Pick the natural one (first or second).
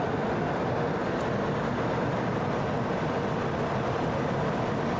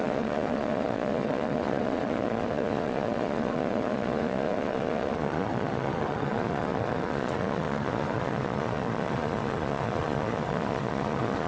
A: first